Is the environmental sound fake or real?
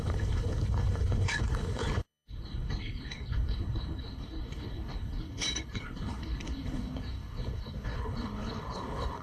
fake